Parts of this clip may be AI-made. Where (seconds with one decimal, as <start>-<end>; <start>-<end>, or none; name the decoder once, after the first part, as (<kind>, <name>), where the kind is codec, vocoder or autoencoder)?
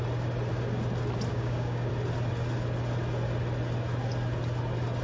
1.3-1.9 (codec, DAC)